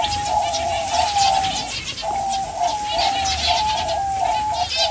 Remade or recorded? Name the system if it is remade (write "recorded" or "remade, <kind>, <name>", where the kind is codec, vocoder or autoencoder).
recorded